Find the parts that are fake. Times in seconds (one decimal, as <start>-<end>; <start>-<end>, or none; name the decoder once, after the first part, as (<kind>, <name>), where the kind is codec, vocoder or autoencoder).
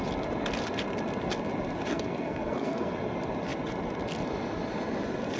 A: 1.9-2.9 (codec, SNAC)